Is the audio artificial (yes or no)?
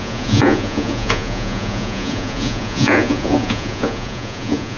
yes